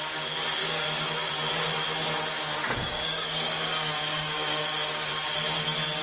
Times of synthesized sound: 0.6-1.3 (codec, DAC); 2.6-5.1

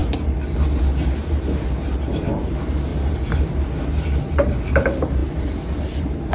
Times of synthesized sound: 0.8-6.3 (vocoder, BigVGAN v2)

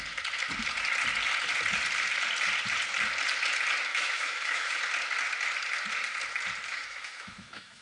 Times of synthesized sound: 3.9-4.8 (autoencoder, DAC-VAE); 6.7-7.8